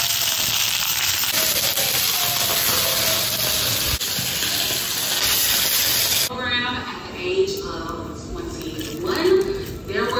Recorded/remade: recorded